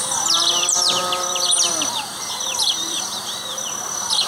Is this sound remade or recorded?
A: remade